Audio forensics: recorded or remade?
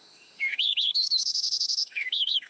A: remade